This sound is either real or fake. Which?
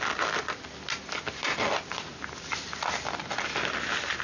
real